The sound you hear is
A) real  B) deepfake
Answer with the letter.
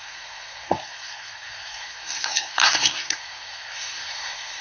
B